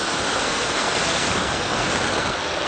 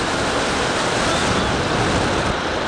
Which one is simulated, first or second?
first